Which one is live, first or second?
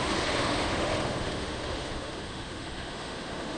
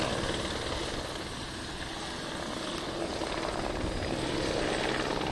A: second